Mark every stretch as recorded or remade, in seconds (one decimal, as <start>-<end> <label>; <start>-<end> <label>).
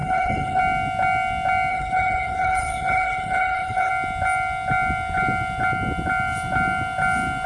0.0-0.6 remade; 0.6-1.7 recorded; 1.7-3.9 remade; 3.9-7.5 recorded